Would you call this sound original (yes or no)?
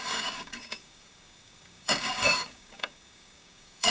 no